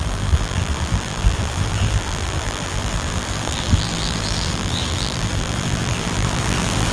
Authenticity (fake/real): fake